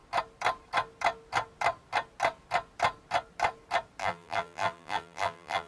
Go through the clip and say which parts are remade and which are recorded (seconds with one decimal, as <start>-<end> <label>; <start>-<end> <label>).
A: 0.0-4.0 recorded; 4.0-5.7 remade